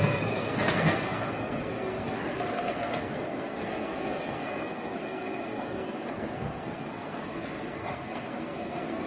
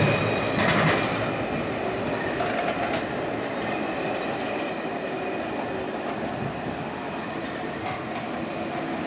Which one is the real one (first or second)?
second